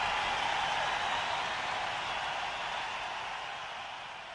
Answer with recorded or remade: recorded